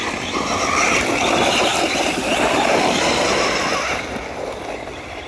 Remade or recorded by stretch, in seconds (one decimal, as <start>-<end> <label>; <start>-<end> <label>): 0.0-1.7 recorded; 1.7-4.7 remade; 4.7-5.3 recorded

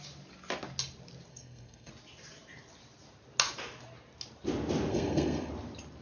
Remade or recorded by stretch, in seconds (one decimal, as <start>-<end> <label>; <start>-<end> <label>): 0.0-1.3 recorded; 1.3-1.9 remade; 1.9-4.9 recorded; 4.9-5.5 remade; 5.5-6.0 recorded

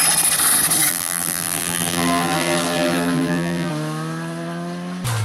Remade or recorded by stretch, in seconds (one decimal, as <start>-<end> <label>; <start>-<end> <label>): 0.0-0.9 recorded; 0.9-3.7 remade; 3.7-5.2 recorded

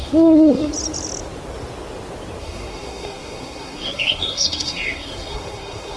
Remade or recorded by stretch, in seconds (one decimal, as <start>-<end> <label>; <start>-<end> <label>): 0.0-0.7 remade; 0.7-2.4 recorded; 2.4-6.0 remade

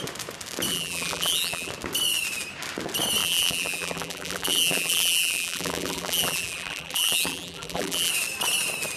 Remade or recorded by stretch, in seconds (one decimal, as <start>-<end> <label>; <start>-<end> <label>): 0.0-0.7 recorded; 0.7-1.7 remade; 1.7-3.2 recorded; 3.2-8.1 remade; 8.1-9.0 recorded

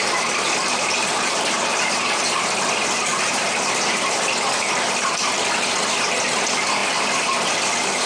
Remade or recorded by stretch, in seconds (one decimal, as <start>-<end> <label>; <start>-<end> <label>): 0.0-5.3 remade; 5.3-6.2 recorded; 6.2-8.1 remade

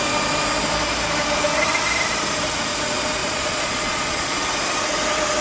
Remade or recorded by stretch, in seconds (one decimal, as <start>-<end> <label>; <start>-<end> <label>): 0.0-3.2 recorded; 3.2-4.4 remade; 4.4-5.4 recorded